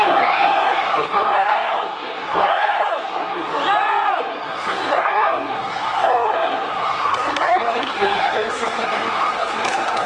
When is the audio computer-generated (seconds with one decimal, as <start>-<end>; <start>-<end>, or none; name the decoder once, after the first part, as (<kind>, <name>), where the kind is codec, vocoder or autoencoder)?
0.0-3.5 (codec, SNAC); 4.2-10.1